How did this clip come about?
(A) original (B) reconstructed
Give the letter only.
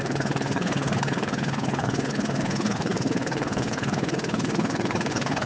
B